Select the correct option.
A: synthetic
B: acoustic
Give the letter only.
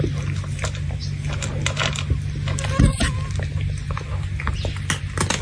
B